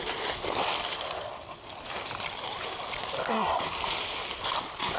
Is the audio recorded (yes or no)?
yes